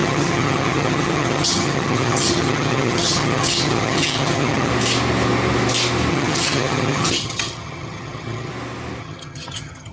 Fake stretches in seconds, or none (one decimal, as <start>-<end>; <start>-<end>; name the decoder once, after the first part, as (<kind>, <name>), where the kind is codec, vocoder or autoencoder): 0.0-4.7 (vocoder, HiFi-GAN); 6.1-8.5; 9.0-9.9